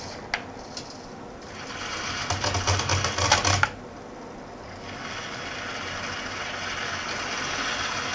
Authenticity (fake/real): real